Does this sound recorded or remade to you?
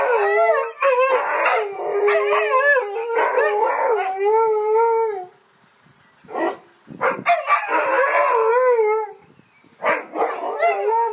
recorded